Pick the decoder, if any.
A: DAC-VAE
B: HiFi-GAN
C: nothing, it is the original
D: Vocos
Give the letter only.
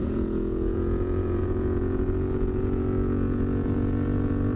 D